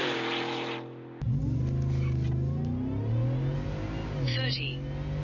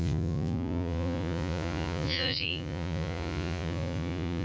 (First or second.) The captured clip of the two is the first